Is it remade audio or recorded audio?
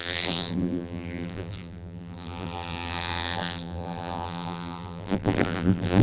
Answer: remade